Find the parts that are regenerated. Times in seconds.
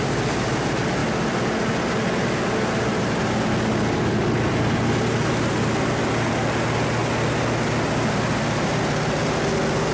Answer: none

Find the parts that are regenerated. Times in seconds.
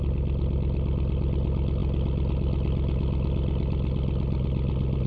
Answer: none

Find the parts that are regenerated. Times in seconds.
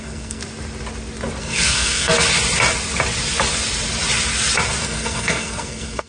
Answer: 0.0-0.4; 1.4-2.1; 4.8-6.1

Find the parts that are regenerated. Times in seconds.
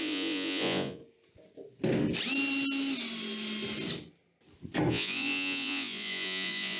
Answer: 0.0-1.0; 4.9-6.8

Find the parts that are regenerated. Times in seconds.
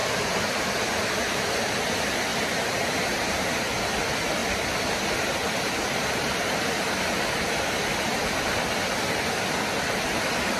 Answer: 0.0-0.6; 2.3-3.4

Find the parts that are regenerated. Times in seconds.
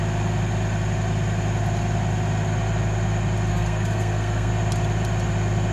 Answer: 3.5-4.5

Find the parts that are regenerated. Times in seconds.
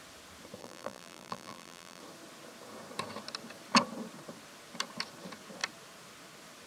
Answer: 0.6-2.0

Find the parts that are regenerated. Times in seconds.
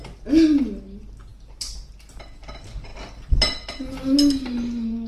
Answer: none